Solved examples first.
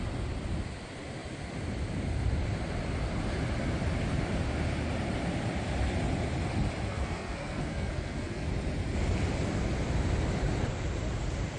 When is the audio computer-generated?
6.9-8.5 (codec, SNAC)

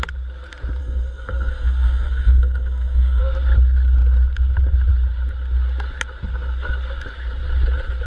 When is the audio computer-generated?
0.8-3.2 (codec, SNAC)

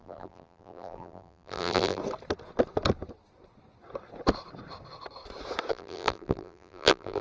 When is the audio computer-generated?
0.0-2.0 (vocoder, BigVGAN v2); 5.7-7.2

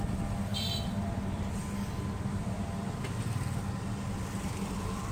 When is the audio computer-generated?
0.5-1.1 (vocoder, BigVGAN v2)

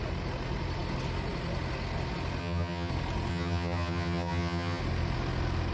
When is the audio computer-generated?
2.4-2.9 (vocoder, HiFi-GAN); 3.3-4.8

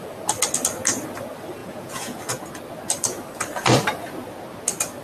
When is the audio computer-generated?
1.6-2.2 (vocoder, Vocos)

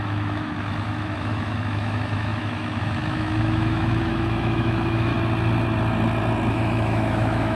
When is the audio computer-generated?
0.0-5.1 (autoencoder, DAC-VAE); 6.5-7.5